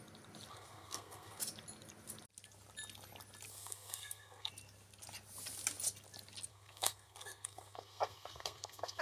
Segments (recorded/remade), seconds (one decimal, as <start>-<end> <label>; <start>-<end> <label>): 0.0-0.5 recorded; 0.5-1.4 remade; 1.4-3.5 recorded; 3.5-4.5 remade; 4.5-6.5 recorded; 6.5-9.0 remade